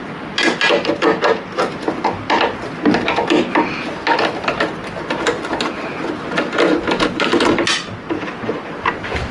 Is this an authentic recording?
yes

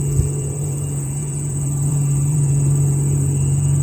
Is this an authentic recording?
no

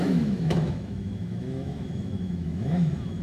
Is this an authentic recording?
no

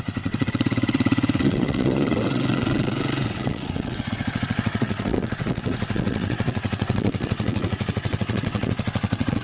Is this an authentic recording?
no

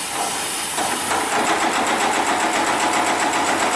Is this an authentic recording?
yes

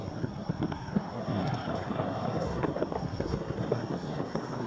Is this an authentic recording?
no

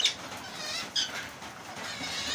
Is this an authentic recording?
yes